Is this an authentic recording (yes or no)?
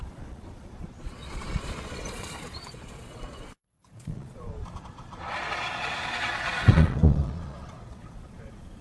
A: no